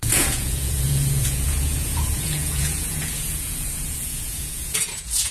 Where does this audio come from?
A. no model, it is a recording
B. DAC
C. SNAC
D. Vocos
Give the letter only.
D